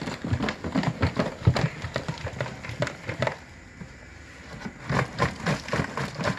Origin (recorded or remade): recorded